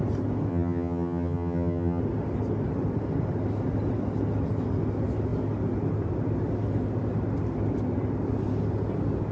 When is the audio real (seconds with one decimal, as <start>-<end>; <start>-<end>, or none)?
0.0-0.5; 2.0-9.3